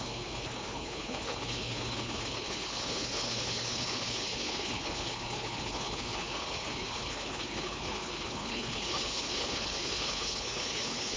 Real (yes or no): no